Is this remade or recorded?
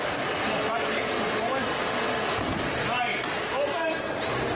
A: remade